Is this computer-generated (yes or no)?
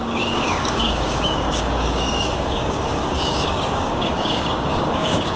yes